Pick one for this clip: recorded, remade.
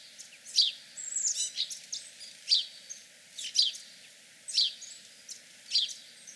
recorded